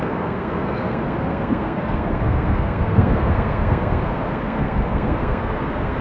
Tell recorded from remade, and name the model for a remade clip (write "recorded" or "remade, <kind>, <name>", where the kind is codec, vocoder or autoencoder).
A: remade, codec, SNAC